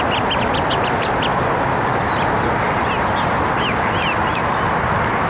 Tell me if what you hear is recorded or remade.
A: recorded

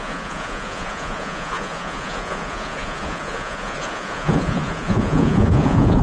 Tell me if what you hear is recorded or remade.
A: remade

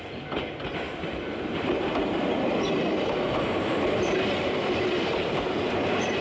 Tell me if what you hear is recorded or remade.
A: remade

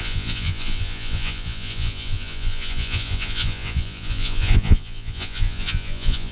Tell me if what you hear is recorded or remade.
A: remade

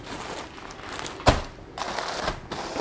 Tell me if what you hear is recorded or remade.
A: recorded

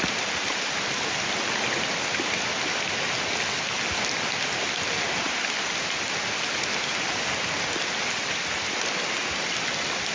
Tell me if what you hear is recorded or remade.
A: recorded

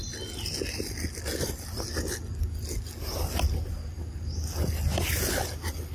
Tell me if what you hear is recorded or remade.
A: recorded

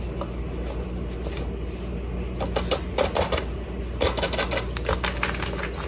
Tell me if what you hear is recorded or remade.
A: recorded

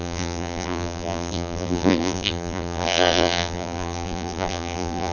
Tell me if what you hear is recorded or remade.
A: remade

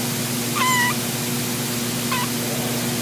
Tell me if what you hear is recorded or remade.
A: recorded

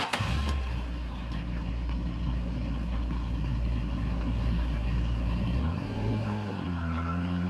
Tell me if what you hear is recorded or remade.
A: remade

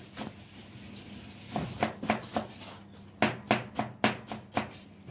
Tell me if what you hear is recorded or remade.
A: recorded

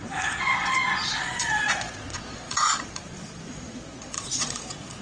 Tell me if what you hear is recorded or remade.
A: remade